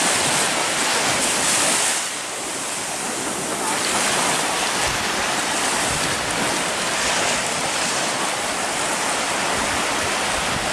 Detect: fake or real real